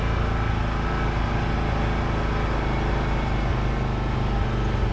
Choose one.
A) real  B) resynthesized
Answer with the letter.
A